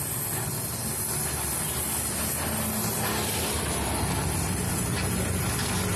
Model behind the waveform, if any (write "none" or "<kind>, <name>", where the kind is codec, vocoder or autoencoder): none